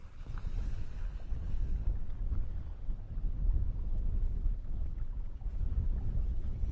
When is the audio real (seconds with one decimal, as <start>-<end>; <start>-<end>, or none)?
0.0-3.6

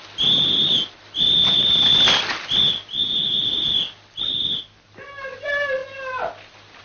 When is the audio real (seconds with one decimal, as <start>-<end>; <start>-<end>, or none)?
0.0-6.8

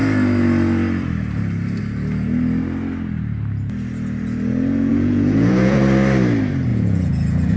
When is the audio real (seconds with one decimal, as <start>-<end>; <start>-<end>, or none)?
0.0-4.9; 5.8-6.7

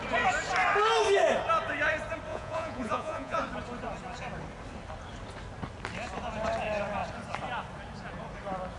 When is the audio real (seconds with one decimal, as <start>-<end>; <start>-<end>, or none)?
0.0-2.3; 3.4-8.8

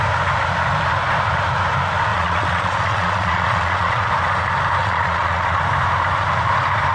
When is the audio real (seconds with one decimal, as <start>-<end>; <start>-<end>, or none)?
0.0-2.1; 4.1-4.8; 5.6-6.9

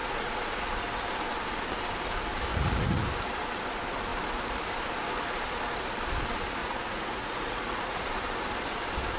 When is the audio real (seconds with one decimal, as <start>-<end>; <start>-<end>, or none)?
0.6-2.5; 3.0-6.6; 8.2-9.2